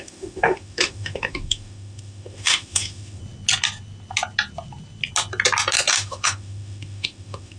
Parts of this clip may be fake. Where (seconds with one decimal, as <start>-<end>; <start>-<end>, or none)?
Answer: 0.0-3.2; 5.9-7.6